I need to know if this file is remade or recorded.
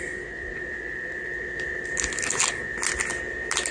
recorded